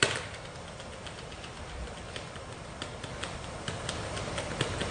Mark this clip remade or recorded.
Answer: remade